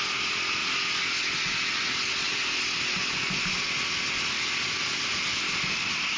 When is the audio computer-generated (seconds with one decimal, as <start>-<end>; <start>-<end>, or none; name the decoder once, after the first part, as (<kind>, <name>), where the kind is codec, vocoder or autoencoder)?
5.1-6.2 (vocoder, BigVGAN v2)